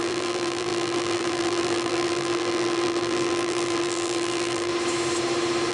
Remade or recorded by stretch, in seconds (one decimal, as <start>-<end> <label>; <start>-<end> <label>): 0.0-4.7 remade; 4.7-5.7 recorded